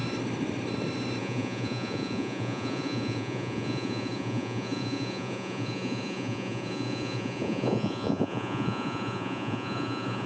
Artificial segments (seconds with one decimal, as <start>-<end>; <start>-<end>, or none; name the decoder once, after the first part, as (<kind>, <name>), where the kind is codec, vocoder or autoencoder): 1.2-10.3 (vocoder, Vocos)